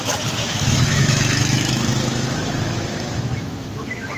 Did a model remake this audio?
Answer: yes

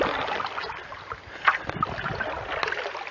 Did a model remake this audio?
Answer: no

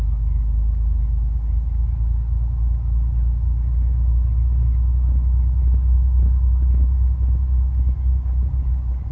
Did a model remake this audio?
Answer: no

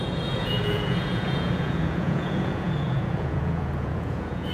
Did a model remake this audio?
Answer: yes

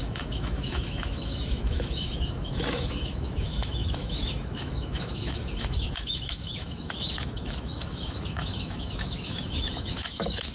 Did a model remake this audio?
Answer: yes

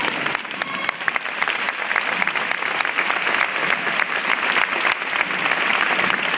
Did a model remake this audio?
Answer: no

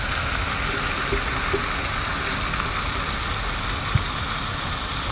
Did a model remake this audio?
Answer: no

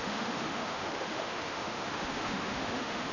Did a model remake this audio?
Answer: yes